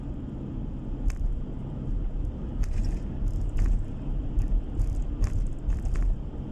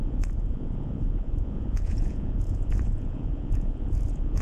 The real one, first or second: first